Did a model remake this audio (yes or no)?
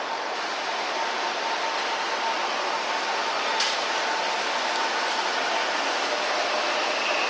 no